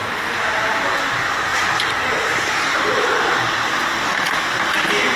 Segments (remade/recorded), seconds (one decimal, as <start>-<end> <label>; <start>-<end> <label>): 0.0-5.2 recorded